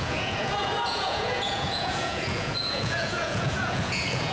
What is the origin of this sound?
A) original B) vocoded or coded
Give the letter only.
B